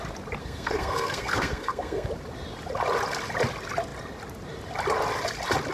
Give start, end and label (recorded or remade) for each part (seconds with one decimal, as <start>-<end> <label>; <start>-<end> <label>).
0.0-0.4 recorded; 0.4-2.1 remade; 2.1-5.7 recorded